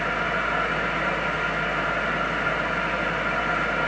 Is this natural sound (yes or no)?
yes